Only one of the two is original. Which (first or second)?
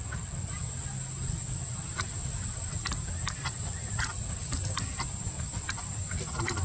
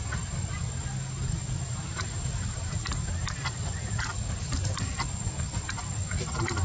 second